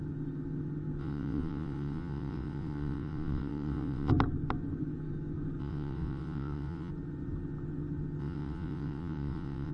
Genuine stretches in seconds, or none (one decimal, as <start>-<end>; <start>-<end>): 0.0-1.0; 4.1-5.6; 6.9-8.2